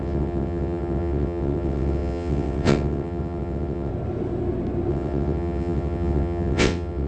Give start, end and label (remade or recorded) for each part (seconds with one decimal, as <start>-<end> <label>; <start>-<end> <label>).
0.0-3.9 remade; 3.9-4.9 recorded; 4.9-7.1 remade